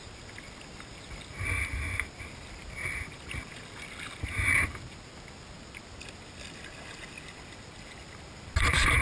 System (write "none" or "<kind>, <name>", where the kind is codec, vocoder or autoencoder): none